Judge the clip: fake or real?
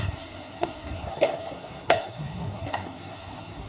fake